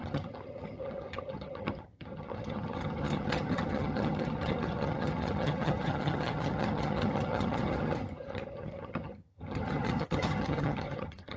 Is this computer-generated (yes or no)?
yes